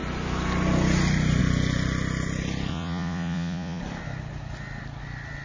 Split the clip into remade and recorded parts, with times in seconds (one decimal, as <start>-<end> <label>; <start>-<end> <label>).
0.0-2.7 recorded; 2.7-3.8 remade; 3.8-5.4 recorded